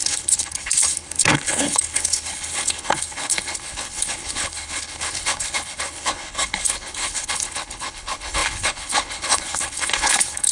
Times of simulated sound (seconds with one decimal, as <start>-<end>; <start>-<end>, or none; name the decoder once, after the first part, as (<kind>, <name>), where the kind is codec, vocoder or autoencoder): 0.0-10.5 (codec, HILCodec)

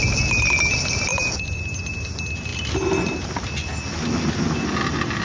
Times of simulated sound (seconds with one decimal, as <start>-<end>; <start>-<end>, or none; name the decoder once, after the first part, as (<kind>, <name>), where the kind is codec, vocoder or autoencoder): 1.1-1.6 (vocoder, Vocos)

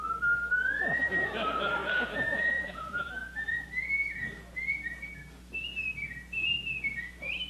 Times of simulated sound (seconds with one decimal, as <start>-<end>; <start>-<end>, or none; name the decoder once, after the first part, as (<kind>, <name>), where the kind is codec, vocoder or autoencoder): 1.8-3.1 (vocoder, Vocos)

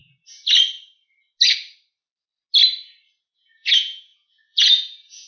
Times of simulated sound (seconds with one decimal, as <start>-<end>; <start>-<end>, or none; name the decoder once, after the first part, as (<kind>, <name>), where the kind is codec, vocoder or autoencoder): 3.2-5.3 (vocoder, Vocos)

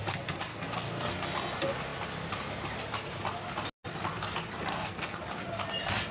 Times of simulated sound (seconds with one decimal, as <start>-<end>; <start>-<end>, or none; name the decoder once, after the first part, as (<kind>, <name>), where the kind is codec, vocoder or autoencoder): 0.5-1.1 (codec, SNAC); 4.7-5.2

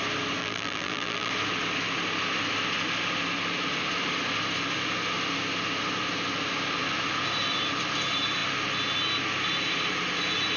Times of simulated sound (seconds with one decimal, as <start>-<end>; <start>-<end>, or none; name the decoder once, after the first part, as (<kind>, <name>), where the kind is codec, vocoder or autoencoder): 0.4-1.3 (vocoder, BigVGAN v2)

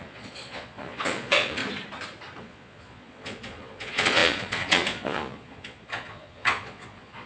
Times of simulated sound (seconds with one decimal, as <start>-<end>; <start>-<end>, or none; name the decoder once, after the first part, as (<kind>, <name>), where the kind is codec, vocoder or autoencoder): 0.0-1.6 (vocoder, Vocos); 2.4-7.3

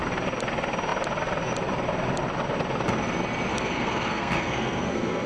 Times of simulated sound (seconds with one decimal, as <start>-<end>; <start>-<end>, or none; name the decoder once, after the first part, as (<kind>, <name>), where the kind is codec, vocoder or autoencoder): 3.5-5.3 (codec, SNAC)